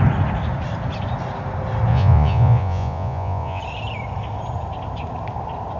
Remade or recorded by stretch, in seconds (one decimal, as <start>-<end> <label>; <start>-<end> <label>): 0.0-1.9 recorded; 1.9-3.6 remade; 3.6-5.8 recorded